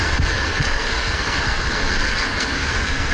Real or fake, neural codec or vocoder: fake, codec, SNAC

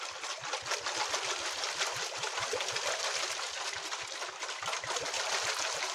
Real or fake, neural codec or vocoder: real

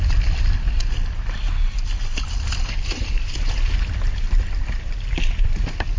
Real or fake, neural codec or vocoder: real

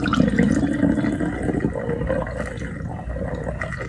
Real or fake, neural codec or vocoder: real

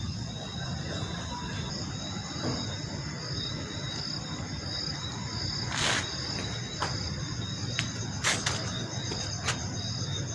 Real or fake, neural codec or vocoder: real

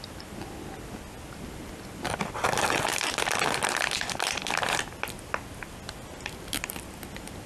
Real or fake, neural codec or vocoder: real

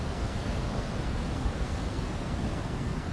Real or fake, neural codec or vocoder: fake, codec, SNAC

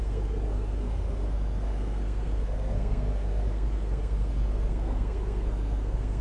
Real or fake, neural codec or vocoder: fake, codec, SNAC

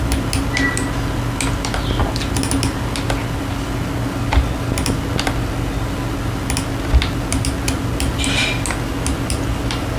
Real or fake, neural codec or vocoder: real